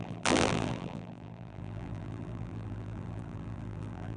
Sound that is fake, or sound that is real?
fake